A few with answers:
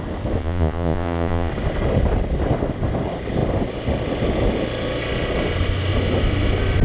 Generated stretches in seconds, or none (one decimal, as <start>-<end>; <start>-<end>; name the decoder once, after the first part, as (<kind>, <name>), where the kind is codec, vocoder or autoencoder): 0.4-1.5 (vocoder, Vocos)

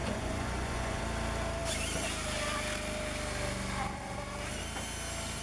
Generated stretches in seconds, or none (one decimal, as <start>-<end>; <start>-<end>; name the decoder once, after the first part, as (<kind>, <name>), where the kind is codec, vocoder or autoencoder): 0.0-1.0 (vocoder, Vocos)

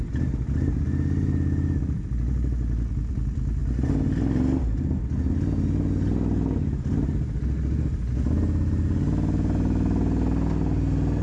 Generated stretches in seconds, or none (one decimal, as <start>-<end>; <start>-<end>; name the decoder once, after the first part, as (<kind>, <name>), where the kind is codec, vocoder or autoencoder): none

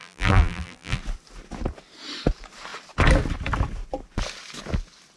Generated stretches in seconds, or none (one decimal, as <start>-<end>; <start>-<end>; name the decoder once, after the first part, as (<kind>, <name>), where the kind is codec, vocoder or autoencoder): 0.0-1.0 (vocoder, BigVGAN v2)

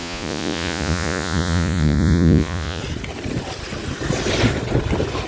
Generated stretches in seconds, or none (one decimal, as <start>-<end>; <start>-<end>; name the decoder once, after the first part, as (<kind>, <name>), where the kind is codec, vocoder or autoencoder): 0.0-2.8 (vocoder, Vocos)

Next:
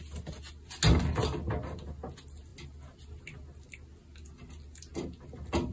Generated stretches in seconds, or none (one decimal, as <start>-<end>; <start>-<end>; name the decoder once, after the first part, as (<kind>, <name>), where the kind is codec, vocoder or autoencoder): none

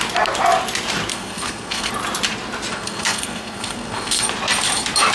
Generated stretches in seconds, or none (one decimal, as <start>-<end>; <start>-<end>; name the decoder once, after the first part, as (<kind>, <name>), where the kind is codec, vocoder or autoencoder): 1.1-1.9 (codec, SNAC); 2.7-4.2